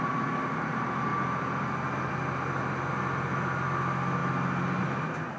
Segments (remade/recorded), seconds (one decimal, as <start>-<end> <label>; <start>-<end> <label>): 0.0-5.4 recorded